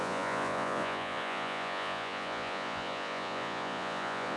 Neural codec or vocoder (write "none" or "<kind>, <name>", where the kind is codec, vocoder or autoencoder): vocoder, Vocos